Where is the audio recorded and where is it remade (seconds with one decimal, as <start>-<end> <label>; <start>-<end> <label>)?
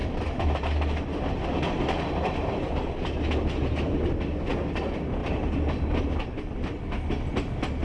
0.0-2.7 remade; 2.7-5.2 recorded; 5.2-6.0 remade; 6.0-7.8 recorded